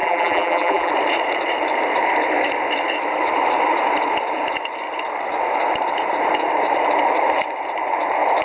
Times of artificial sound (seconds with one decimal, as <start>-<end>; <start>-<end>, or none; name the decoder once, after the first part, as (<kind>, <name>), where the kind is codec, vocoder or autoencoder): 0.0-0.9 (vocoder, BigVGAN v2)